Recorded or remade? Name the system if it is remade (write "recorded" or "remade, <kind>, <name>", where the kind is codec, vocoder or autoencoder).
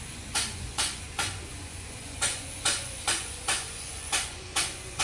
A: remade, vocoder, Vocos